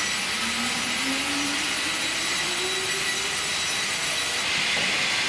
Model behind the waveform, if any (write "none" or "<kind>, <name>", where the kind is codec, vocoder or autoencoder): none